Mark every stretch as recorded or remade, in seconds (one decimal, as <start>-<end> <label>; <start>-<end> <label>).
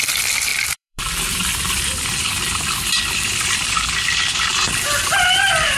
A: 0.0-4.5 remade; 4.5-5.8 recorded